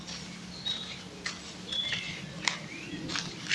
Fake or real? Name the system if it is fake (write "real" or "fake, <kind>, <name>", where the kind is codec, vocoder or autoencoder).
real